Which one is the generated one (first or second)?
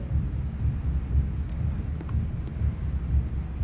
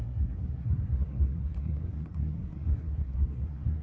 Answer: second